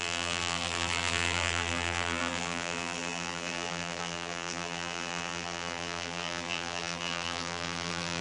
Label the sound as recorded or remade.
remade